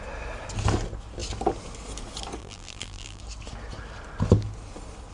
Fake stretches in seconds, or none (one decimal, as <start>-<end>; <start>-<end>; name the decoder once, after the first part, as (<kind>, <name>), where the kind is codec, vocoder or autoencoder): 2.4-3.2 (vocoder, BigVGAN v2)